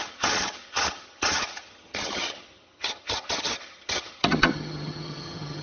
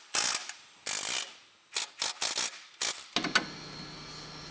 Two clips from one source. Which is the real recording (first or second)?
second